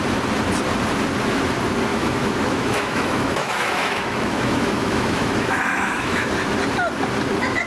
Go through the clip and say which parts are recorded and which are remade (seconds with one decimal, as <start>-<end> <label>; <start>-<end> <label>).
0.0-1.9 recorded; 1.9-6.3 remade; 6.3-7.7 recorded